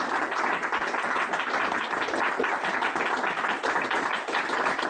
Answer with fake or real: real